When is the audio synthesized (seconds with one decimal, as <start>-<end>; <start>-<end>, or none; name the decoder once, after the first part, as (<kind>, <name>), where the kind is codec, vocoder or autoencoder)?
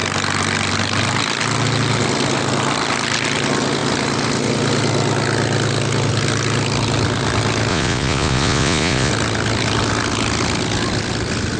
7.7-9.1 (vocoder, Vocos)